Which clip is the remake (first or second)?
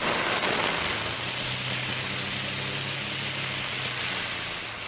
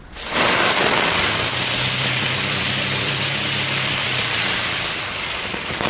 second